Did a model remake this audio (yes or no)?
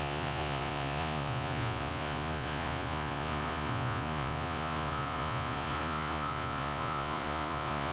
yes